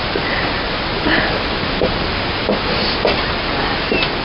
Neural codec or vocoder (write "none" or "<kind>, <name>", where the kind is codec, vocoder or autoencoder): none